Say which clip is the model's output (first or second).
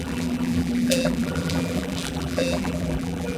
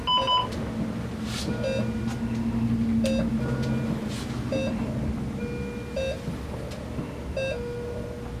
first